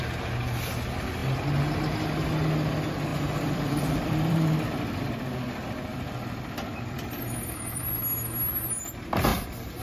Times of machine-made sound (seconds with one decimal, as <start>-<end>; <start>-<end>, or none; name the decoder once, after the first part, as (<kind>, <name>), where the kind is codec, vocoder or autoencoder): 3.1-4.8 (vocoder, BigVGAN v2); 5.9-8.0; 9.3-9.8